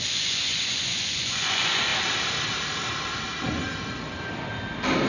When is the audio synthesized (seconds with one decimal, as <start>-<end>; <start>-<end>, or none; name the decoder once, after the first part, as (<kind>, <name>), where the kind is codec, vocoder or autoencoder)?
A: 0.0-1.9 (vocoder, Vocos)